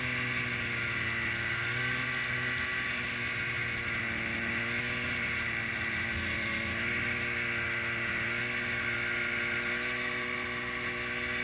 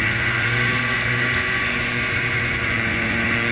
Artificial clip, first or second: second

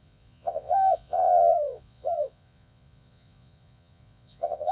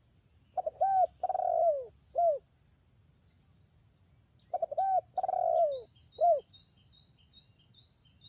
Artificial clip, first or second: first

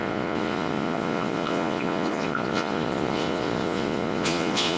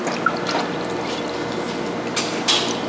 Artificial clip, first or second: first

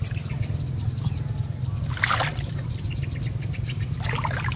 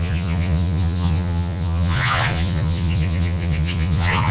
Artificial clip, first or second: second